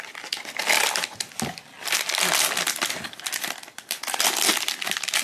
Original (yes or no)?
yes